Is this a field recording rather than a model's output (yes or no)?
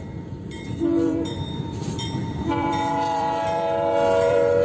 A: no